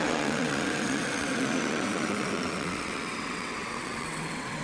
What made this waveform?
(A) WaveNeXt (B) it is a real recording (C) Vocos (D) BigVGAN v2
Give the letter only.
A